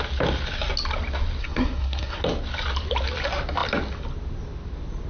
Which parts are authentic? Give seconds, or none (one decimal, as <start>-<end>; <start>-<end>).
0.0-1.4; 2.2-5.1